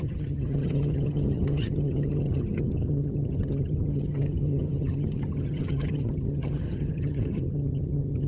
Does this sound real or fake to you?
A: fake